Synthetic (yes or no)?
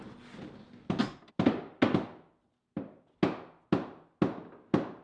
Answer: no